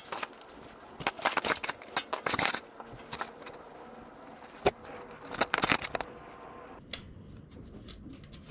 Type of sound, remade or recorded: recorded